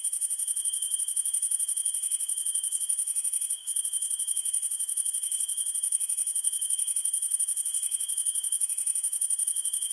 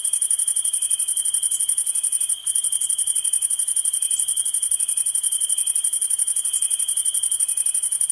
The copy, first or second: first